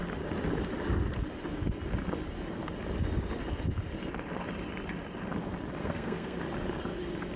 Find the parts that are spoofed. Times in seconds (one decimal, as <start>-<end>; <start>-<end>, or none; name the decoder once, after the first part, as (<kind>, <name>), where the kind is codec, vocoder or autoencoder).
5.8-6.4 (codec, SNAC)